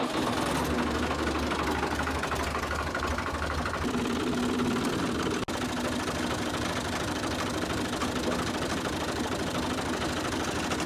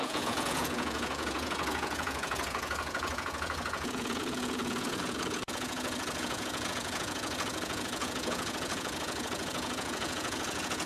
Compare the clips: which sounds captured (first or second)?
first